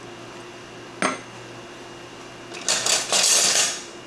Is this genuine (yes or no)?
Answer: yes